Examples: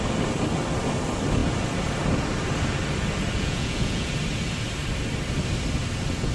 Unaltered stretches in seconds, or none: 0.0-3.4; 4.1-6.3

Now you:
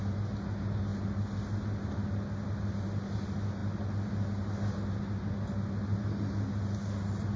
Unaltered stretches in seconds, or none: 0.0-7.4

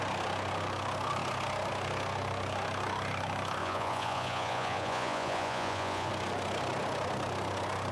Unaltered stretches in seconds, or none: 0.0-3.6; 6.1-7.9

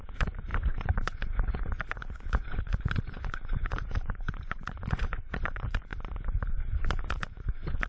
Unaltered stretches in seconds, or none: 5.9-7.1

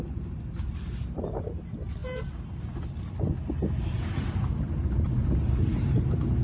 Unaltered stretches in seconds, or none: 0.0-6.4